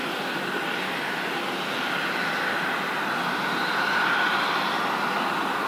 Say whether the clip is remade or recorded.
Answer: recorded